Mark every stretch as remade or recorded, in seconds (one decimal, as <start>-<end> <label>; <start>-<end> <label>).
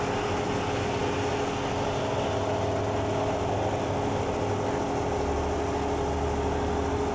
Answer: 0.0-7.1 recorded